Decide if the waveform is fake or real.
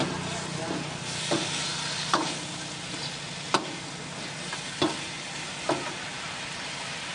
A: real